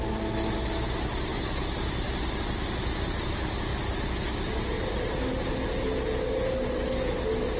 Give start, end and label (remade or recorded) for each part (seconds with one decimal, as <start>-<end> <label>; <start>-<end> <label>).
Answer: 0.0-7.6 recorded